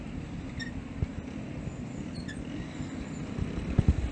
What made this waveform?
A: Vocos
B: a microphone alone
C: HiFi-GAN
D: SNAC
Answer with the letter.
B